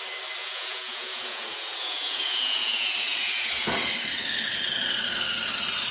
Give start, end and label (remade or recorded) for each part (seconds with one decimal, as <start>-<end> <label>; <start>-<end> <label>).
0.0-0.4 recorded; 0.4-3.9 remade; 3.9-5.9 recorded